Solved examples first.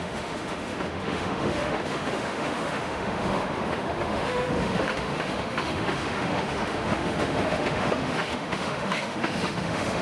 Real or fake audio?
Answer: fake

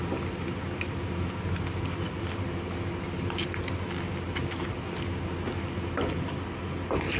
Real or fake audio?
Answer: real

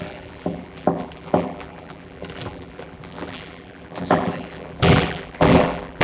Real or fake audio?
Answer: fake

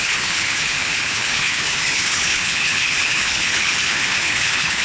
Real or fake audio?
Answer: fake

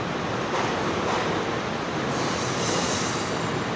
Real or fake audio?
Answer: real